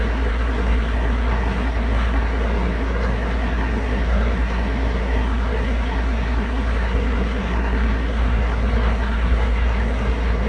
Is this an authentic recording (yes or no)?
no